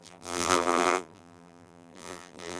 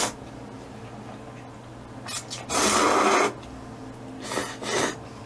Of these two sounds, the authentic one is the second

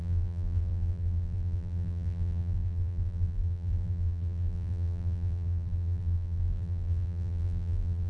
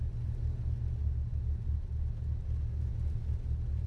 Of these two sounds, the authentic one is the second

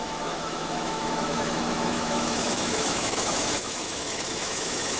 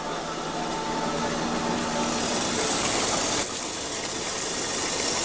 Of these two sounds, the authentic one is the second